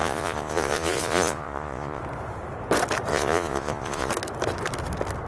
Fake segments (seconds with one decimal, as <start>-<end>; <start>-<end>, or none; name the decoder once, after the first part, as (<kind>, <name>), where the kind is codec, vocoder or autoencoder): 0.0-2.0 (vocoder, Vocos); 3.1-4.1